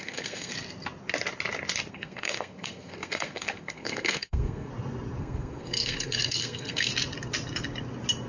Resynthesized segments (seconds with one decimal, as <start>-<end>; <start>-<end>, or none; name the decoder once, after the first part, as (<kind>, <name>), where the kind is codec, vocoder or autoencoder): 0.0-0.5 (codec, SNAC); 1.9-4.7; 5.2-6.9